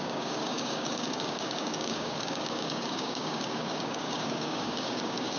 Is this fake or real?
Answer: fake